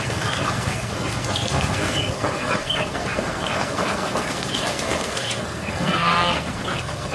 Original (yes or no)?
no